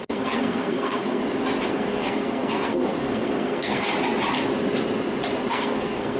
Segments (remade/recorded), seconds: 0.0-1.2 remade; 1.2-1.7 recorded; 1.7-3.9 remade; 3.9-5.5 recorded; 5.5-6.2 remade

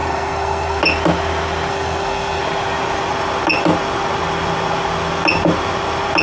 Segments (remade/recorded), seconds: 0.0-0.8 remade; 0.8-1.7 recorded; 1.7-2.4 remade; 2.4-6.2 recorded

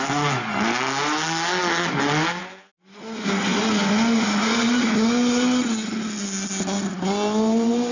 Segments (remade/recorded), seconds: 0.0-7.9 recorded

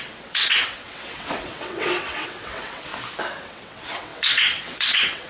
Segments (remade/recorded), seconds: 0.0-2.9 remade; 2.9-3.5 recorded; 3.5-5.3 remade

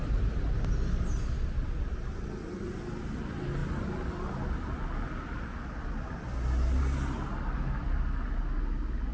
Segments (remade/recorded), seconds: 0.0-9.1 recorded

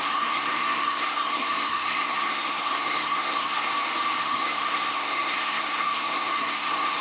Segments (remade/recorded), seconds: 0.0-3.7 remade; 3.7-4.2 recorded; 4.2-7.0 remade